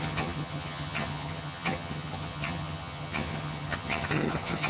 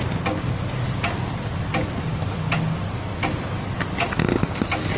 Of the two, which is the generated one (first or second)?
first